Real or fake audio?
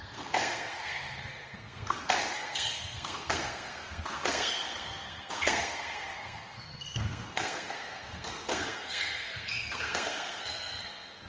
fake